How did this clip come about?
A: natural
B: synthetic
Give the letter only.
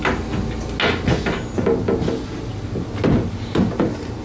A